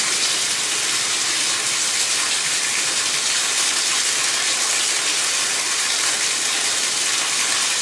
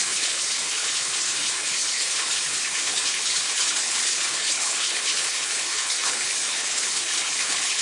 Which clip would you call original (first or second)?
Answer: first